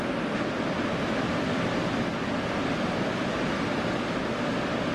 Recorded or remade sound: recorded